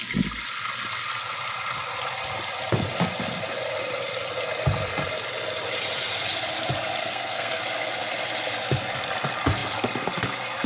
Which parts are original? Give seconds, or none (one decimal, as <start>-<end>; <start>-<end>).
0.0-7.0; 7.6-10.7